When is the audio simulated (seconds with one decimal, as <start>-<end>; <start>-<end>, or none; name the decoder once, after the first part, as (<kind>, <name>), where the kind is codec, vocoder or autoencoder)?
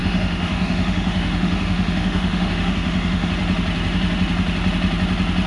0.0-3.3 (autoencoder, DAC-VAE)